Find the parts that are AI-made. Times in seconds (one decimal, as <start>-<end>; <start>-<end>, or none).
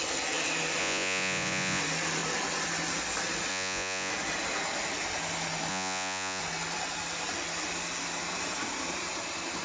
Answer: 0.8-1.8; 3.5-4.1; 5.7-6.4